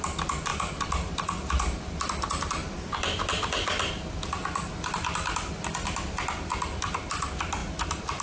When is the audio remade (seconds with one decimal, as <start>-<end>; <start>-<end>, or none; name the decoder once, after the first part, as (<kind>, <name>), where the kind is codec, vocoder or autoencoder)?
none